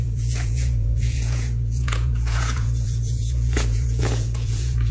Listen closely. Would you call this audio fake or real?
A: fake